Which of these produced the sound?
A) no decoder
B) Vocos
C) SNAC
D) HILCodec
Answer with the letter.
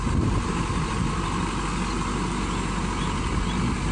A